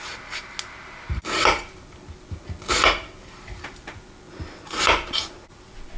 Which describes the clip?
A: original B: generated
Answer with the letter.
A